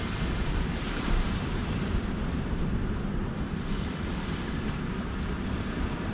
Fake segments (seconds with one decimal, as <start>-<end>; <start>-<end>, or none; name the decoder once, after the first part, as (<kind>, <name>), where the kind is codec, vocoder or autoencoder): 0.0-3.3 (vocoder, BigVGAN v2)